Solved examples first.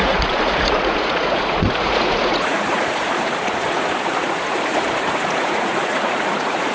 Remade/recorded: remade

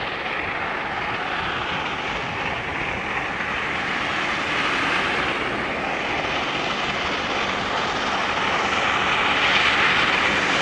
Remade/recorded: recorded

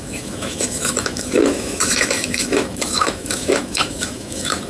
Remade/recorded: remade